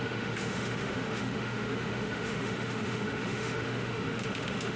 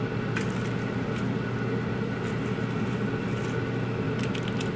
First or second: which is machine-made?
first